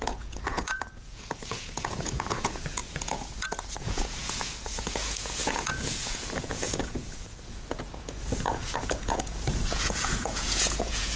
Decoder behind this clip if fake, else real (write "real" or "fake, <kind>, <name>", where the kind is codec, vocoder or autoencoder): fake, vocoder, Vocos